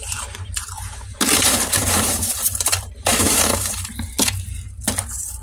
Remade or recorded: remade